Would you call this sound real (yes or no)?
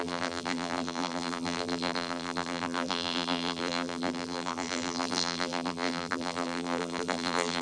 no